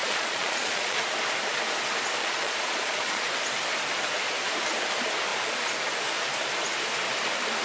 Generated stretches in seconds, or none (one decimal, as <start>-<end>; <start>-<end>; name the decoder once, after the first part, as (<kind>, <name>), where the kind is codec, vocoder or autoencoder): 0.0-1.0 (vocoder, Vocos); 2.2-3.3

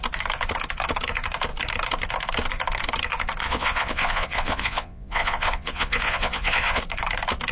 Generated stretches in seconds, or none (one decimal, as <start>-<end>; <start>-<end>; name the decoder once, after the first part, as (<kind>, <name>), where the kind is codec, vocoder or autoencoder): 3.4-6.8 (vocoder, Vocos)

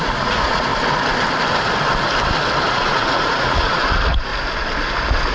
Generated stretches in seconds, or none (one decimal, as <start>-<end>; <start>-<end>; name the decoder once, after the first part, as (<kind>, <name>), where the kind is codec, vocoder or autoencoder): 0.0-0.7 (vocoder, Vocos); 2.7-4.3

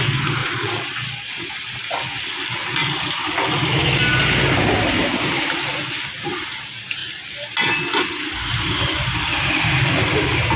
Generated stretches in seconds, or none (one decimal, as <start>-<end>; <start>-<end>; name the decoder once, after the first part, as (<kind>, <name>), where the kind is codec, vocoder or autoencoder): 0.4-1.5 (vocoder, Vocos)

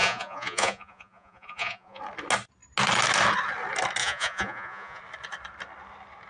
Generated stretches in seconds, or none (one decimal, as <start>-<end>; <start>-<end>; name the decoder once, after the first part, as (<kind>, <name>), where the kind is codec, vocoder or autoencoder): 0.0-2.0 (vocoder, Vocos); 4.0-5.0